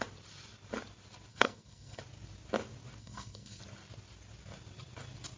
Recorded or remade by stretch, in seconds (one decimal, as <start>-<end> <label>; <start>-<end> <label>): 0.0-1.3 recorded; 1.3-2.0 remade; 2.0-3.0 recorded; 3.0-3.6 remade; 3.6-5.4 recorded